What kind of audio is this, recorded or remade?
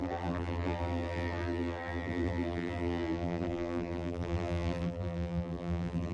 remade